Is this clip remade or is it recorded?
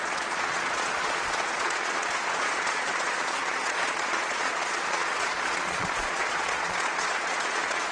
remade